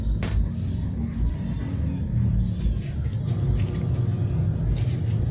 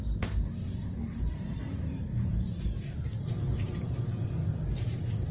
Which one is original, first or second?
first